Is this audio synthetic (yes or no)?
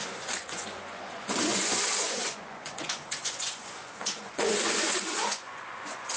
yes